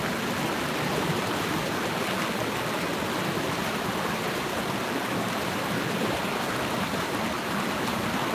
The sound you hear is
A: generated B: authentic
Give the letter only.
B